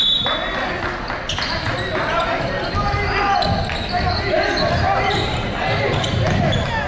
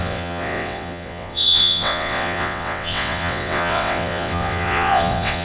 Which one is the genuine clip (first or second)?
first